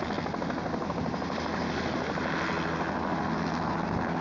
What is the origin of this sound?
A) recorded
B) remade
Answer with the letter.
A